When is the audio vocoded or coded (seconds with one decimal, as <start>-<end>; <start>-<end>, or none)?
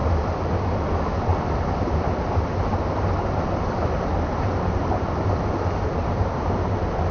none